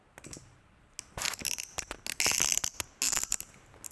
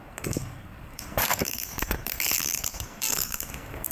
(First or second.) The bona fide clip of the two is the first